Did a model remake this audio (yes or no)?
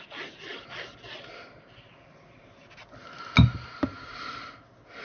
no